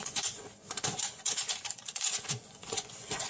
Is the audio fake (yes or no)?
yes